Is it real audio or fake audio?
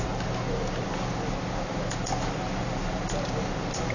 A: real